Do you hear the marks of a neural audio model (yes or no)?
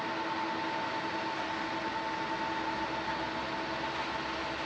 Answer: no